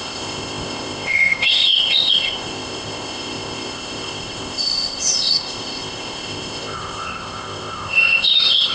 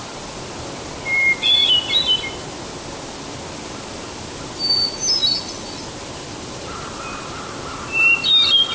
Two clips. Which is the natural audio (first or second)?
second